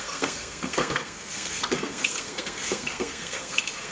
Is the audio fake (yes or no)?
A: yes